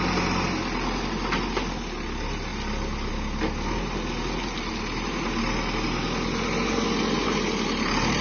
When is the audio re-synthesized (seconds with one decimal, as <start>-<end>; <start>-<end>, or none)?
none